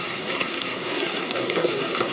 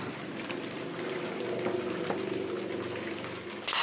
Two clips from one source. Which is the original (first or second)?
second